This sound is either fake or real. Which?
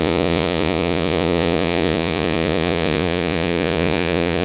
fake